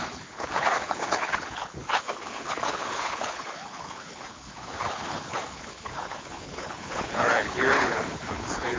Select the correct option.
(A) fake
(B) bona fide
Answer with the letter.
A